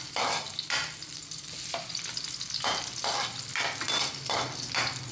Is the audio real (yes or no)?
yes